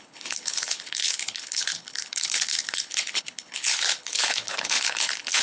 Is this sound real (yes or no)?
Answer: no